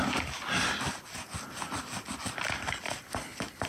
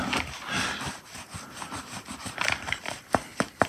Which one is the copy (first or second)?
second